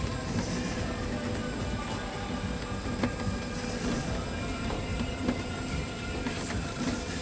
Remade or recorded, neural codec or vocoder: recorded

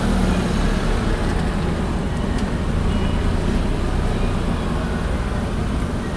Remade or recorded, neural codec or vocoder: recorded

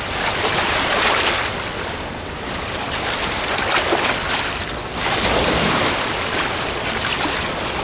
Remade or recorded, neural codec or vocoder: recorded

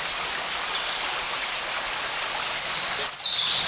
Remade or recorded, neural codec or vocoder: recorded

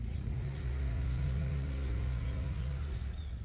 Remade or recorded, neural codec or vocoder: remade, vocoder, Vocos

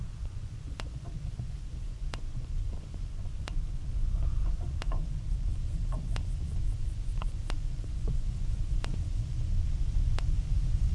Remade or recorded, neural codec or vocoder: remade, vocoder, Vocos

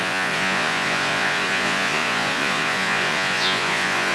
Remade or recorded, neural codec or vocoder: remade, vocoder, Vocos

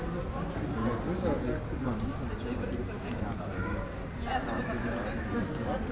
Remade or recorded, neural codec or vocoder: recorded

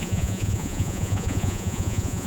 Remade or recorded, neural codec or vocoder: remade, vocoder, Vocos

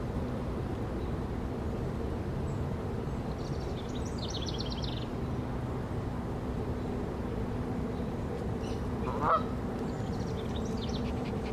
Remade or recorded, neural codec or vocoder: recorded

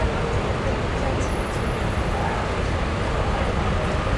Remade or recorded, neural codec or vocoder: recorded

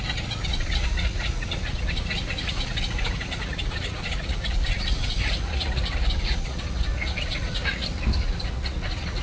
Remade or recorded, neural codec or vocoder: remade, vocoder, Vocos